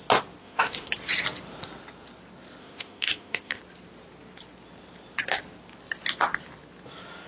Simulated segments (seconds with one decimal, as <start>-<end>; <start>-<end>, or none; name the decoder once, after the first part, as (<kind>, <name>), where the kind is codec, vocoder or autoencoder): 0.4-0.9 (autoencoder, DAC-VAE); 2.6-3.6

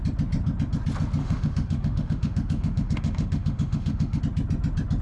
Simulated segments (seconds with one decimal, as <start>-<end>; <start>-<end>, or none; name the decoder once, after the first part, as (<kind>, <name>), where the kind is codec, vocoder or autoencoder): 1.2-4.2 (autoencoder, DAC-VAE)

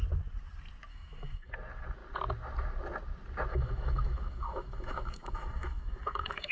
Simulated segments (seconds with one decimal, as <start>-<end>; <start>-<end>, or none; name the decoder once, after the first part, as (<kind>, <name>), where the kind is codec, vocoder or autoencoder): 0.9-1.5 (autoencoder, DAC-VAE); 3.5-6.5

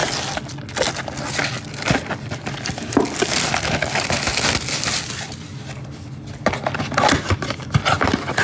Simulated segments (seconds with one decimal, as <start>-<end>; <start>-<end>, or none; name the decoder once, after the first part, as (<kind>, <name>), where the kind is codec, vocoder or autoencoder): none

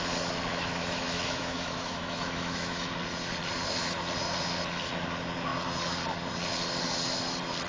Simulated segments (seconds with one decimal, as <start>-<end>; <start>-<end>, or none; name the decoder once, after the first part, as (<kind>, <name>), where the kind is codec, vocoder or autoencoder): 0.5-2.9 (autoencoder, DAC-VAE)

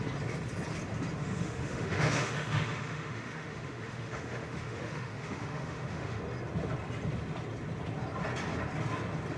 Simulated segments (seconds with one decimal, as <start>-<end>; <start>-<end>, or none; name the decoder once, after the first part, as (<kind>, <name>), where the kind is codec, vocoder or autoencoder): 1.2-6.2 (autoencoder, DAC-VAE)

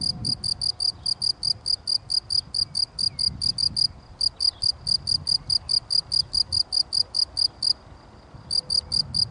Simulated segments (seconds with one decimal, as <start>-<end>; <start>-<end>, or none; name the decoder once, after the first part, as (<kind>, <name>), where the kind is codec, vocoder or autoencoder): none